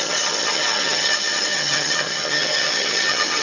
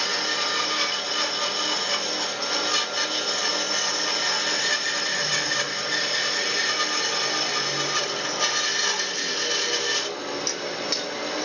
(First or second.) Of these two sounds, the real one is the second